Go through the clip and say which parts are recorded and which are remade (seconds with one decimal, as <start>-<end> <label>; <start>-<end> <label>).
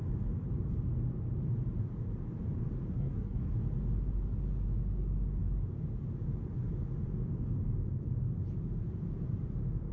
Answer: 0.0-2.9 recorded; 2.9-3.5 remade; 3.5-9.9 recorded